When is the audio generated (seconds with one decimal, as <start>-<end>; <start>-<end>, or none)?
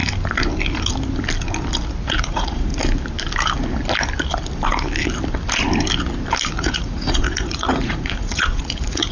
2.2-2.7; 6.5-9.1